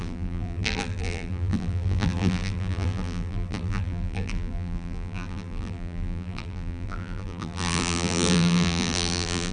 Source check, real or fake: fake